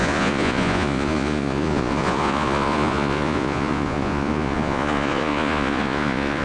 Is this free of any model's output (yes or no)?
no